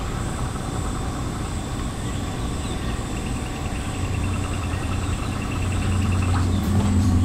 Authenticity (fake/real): fake